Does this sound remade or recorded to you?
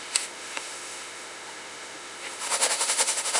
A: remade